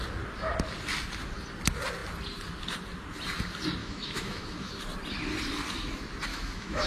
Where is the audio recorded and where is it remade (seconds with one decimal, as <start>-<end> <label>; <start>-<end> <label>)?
0.0-3.8 recorded; 3.8-4.8 remade; 4.8-6.3 recorded; 6.3-6.9 remade